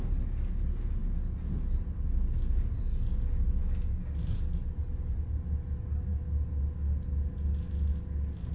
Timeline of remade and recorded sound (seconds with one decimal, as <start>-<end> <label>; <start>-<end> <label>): 0.0-8.5 recorded